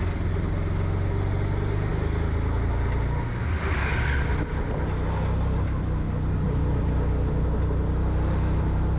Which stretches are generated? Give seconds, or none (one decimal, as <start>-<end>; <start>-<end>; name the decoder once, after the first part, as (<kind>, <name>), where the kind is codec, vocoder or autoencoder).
none